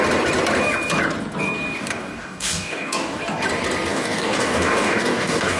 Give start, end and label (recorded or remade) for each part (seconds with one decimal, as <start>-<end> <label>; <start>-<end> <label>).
0.0-1.8 recorded; 1.8-3.2 remade; 3.2-3.9 recorded; 3.9-5.6 remade